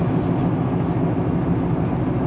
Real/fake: real